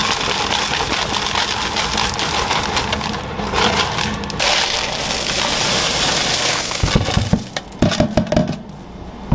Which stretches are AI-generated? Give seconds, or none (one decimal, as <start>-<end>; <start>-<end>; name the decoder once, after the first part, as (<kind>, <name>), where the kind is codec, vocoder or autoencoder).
6.3-6.9 (codec, SNAC)